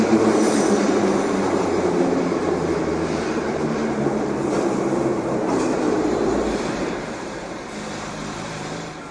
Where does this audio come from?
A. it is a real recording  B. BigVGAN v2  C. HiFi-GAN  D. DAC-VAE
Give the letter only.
B